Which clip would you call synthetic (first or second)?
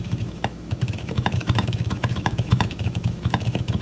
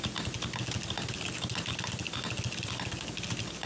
first